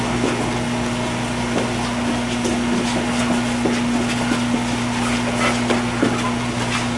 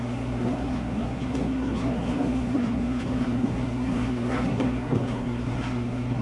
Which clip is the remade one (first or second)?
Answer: second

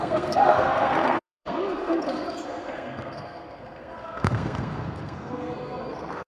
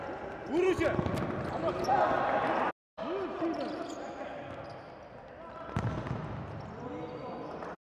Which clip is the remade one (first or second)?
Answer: first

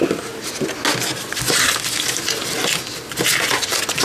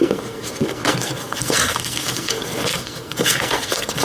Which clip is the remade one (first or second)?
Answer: second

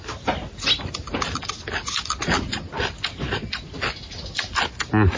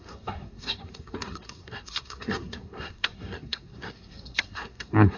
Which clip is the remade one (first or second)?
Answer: second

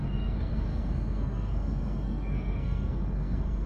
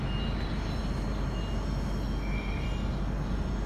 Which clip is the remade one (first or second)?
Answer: first